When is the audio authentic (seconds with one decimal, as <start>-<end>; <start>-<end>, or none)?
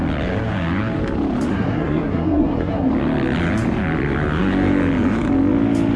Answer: 0.0-1.5; 2.9-6.0